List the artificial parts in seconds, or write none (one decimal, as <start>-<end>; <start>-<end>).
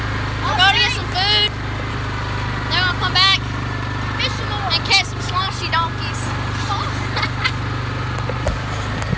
none